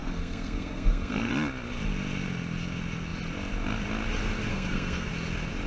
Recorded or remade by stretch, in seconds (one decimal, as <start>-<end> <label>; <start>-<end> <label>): 0.0-1.3 remade; 1.3-4.5 recorded; 4.5-5.1 remade; 5.1-5.7 recorded